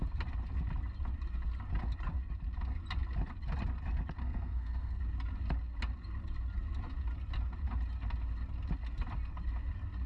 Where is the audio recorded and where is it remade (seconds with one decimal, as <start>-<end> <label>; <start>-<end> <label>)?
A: 0.0-4.2 recorded; 4.2-5.0 remade; 5.0-10.1 recorded